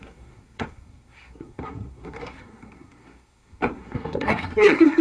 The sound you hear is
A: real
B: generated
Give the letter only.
B